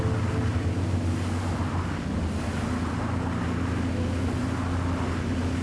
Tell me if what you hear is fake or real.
real